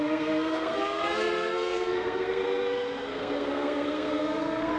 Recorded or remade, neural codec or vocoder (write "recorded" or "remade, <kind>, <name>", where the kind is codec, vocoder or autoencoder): remade, codec, SNAC